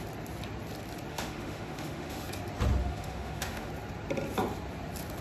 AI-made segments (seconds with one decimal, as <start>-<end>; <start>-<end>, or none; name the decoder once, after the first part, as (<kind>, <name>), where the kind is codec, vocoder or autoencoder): 1.1-2.3 (autoencoder, DAC-VAE); 2.8-3.7